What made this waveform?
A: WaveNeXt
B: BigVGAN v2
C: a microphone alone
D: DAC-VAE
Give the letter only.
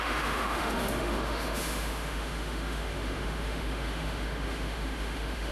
D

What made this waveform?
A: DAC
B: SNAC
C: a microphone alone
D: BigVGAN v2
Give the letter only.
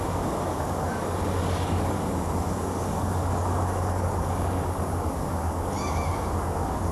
A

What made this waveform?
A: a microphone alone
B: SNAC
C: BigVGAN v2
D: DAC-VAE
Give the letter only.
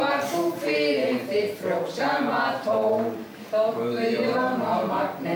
C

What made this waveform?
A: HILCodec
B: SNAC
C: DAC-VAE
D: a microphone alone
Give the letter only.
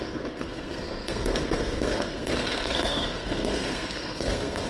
B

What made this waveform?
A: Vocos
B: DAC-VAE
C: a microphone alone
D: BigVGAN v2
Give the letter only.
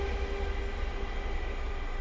C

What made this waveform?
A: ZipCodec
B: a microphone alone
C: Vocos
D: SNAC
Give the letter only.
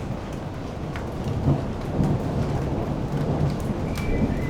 B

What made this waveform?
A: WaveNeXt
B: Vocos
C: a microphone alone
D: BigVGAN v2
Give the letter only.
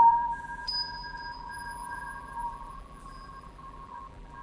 D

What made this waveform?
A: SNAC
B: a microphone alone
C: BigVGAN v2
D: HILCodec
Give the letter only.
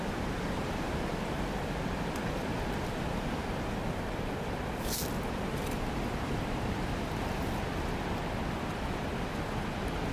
B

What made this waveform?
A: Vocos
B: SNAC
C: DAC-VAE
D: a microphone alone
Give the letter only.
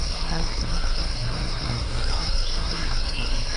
B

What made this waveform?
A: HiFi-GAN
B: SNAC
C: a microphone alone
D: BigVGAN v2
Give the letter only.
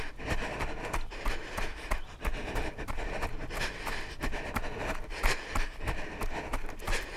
C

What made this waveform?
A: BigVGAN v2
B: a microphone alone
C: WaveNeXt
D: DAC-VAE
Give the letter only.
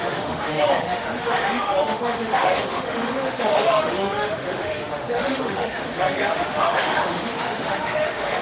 D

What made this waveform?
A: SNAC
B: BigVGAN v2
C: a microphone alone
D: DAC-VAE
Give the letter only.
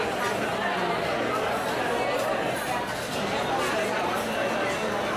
C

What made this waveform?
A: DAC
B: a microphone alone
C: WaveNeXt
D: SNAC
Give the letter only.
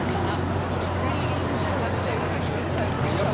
B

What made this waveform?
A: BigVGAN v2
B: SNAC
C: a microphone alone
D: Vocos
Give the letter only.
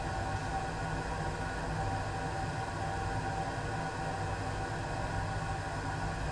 C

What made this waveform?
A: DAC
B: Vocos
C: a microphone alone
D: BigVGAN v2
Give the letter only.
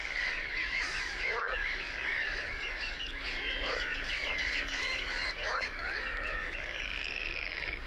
A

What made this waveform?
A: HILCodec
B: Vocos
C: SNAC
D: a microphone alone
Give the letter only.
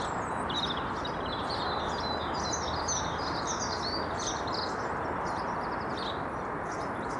D